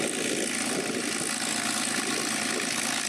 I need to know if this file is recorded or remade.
recorded